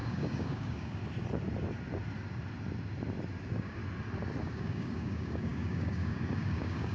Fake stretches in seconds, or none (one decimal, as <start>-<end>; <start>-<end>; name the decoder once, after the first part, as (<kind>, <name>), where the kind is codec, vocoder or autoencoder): 0.0-1.0 (codec, DAC); 3.4-3.8; 4.4-6.9